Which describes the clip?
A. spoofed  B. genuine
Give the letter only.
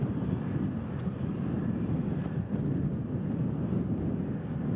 B